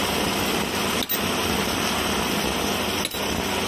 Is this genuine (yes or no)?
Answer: yes